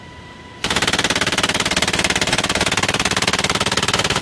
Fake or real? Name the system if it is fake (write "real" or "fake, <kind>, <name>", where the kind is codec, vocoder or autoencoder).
fake, vocoder, BigVGAN v2